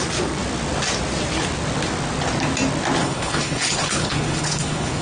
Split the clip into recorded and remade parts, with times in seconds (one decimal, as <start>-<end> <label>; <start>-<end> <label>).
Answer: 0.0-3.0 recorded; 3.0-5.0 remade